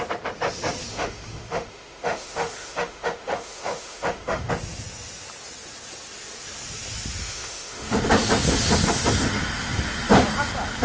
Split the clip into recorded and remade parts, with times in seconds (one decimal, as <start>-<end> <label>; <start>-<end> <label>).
0.0-0.9 recorded; 0.9-4.5 remade; 4.5-7.2 recorded; 7.2-8.0 remade; 8.0-10.8 recorded